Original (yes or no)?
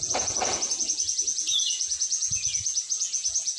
no